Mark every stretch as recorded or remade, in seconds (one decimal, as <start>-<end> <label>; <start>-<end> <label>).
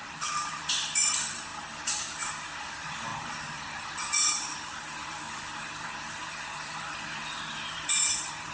0.0-8.5 remade